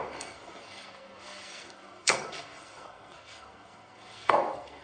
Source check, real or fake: fake